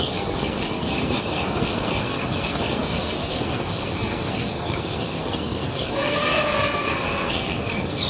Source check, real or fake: fake